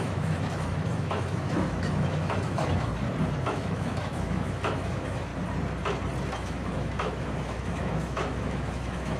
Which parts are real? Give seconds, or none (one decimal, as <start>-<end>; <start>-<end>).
2.9-3.4; 5.3-6.3